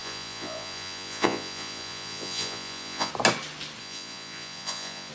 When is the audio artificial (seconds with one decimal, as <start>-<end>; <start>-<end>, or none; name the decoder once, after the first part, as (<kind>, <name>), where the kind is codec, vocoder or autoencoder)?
0.0-3.1 (vocoder, Vocos); 3.8-5.1